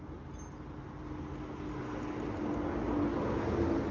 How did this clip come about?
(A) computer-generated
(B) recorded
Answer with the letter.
B